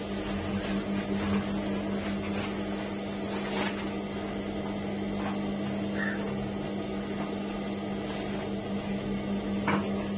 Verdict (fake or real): real